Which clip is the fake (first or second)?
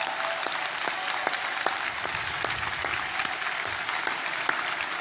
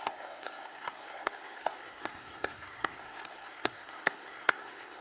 second